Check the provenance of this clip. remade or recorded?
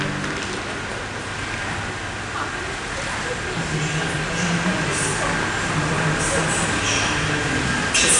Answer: recorded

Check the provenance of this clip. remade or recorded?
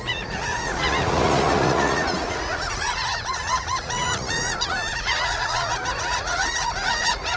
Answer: remade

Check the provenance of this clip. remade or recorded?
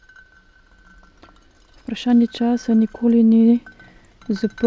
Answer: recorded